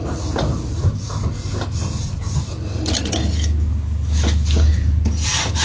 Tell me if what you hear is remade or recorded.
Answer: recorded